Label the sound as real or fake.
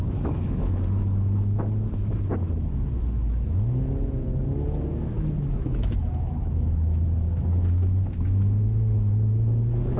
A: fake